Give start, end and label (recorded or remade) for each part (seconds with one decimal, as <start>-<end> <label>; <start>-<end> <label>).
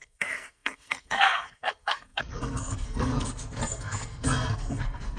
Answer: 0.0-5.2 remade